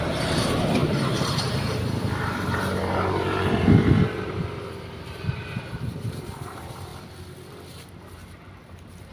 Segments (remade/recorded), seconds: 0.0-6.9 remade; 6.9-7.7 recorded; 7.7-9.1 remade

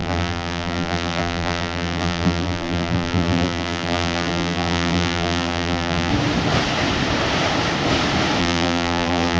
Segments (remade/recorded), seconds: 0.0-6.1 remade; 6.1-8.4 recorded; 8.4-9.4 remade

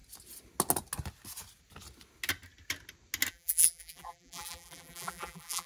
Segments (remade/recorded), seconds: 0.0-3.3 recorded; 3.3-5.7 remade

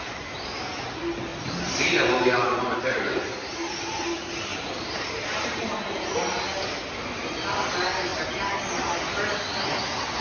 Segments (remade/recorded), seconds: 0.0-1.3 recorded; 1.3-3.7 remade; 3.7-4.5 recorded; 4.5-5.7 remade; 5.7-10.2 recorded

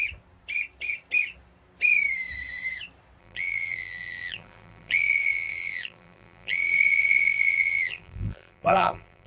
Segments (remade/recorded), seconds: 0.0-3.2 recorded; 3.2-9.3 remade

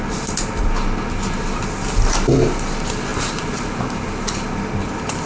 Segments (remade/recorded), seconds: 0.0-3.1 recorded; 3.1-4.5 remade; 4.5-5.3 recorded